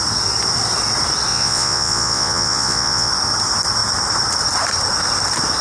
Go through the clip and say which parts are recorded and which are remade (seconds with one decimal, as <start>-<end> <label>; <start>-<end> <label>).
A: 0.0-1.3 recorded; 1.3-3.1 remade; 3.1-5.6 recorded